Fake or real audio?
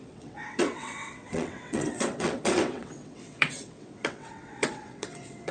fake